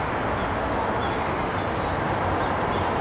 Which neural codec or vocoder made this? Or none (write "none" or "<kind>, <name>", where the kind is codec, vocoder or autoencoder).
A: none